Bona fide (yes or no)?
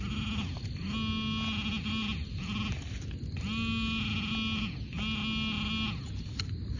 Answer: yes